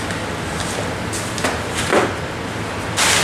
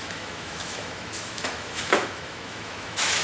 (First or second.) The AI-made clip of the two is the second